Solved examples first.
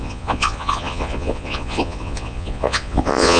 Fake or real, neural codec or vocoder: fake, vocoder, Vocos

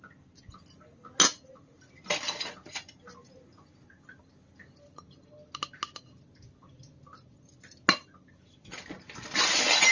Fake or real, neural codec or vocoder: real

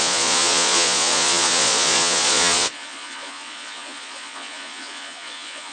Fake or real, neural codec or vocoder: fake, vocoder, Vocos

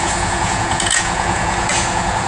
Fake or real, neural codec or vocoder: fake, vocoder, Vocos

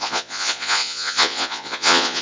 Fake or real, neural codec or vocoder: fake, vocoder, Vocos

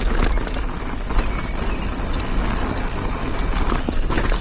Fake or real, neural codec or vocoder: real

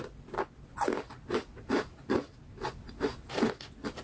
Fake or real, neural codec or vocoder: real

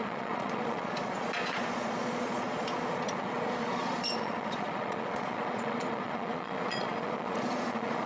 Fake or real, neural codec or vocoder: fake, vocoder, Vocos